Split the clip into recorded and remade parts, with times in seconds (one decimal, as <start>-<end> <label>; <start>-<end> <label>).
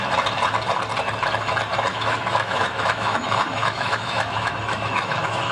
0.0-1.9 recorded; 1.9-5.5 remade